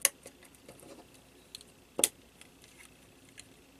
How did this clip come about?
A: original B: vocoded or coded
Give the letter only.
A